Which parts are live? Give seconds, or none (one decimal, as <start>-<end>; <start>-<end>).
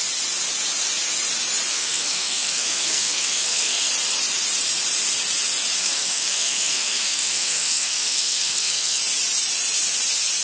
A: 0.0-1.7; 3.9-5.8; 9.0-10.4